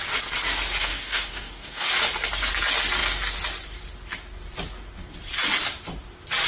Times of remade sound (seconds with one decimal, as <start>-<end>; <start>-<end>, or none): 0.8-1.9

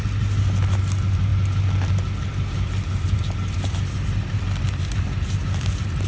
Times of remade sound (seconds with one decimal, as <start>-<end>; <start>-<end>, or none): none

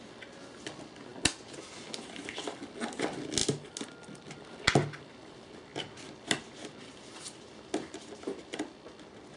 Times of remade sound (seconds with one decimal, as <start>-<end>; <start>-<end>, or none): none

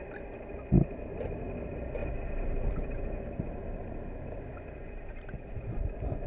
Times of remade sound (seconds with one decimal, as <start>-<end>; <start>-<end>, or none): 2.0-5.8

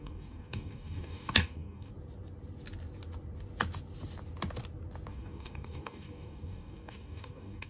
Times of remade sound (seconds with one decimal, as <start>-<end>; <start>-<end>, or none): 0.0-1.9; 5.1-7.7